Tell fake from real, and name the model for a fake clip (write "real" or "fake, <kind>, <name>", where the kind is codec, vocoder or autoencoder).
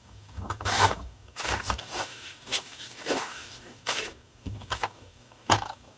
fake, codec, DAC